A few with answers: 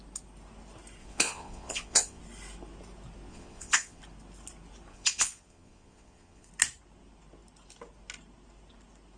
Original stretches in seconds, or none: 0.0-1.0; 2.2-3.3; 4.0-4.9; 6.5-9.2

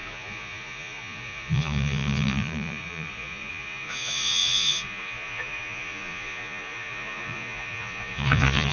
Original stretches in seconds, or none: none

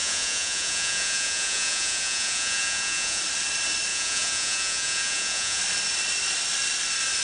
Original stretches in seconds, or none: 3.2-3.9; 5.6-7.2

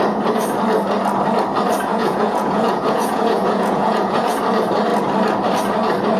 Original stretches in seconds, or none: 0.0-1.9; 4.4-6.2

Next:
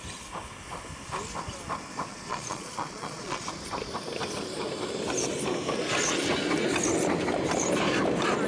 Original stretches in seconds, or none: 0.0-2.1; 3.5-8.5